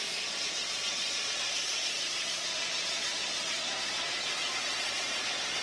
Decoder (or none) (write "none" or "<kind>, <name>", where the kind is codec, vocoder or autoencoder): vocoder, Vocos